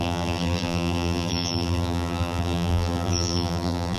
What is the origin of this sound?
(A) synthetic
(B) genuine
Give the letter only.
A